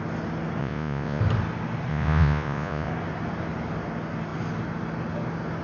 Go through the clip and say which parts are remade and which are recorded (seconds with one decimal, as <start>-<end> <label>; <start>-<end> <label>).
0.0-0.6 recorded; 0.6-1.2 remade; 1.2-1.9 recorded; 1.9-2.9 remade; 2.9-5.6 recorded

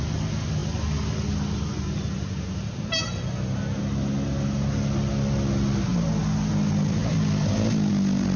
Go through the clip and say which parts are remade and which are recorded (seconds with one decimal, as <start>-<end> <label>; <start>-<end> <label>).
0.0-8.4 recorded

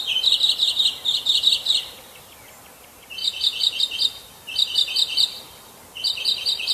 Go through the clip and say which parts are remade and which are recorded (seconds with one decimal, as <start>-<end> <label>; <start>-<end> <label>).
0.0-3.2 recorded; 3.2-3.8 remade; 3.8-6.7 recorded

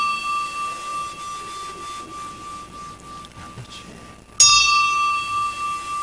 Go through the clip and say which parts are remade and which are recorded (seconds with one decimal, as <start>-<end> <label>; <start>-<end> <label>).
0.0-6.0 recorded

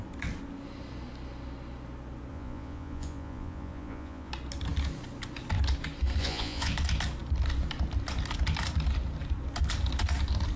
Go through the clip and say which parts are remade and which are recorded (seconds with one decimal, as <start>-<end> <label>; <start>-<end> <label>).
0.0-2.3 recorded; 2.3-4.3 remade; 4.3-6.2 recorded; 6.2-6.7 remade; 6.7-10.6 recorded

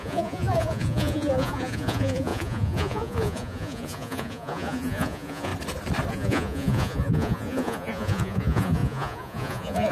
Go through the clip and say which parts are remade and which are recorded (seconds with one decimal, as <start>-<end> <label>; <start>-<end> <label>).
0.0-5.5 remade; 5.5-6.1 recorded; 6.1-9.9 remade

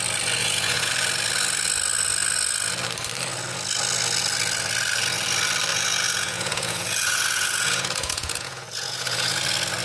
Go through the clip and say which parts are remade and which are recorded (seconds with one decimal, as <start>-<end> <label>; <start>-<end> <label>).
0.0-0.4 recorded; 0.4-0.9 remade; 0.9-5.7 recorded; 5.7-9.4 remade; 9.4-9.8 recorded